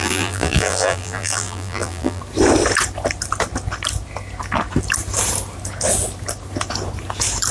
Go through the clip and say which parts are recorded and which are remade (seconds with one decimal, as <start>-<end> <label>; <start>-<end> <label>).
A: 0.0-2.2 remade; 2.2-7.5 recorded